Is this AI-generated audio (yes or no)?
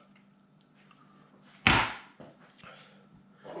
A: no